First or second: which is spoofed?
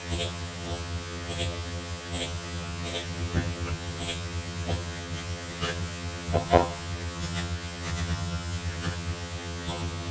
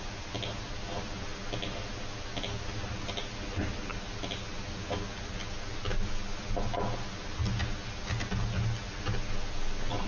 first